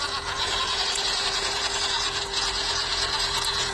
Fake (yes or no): yes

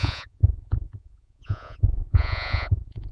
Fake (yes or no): yes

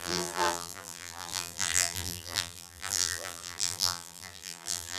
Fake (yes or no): yes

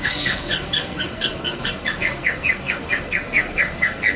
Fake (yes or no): yes